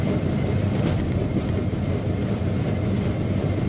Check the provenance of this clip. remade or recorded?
remade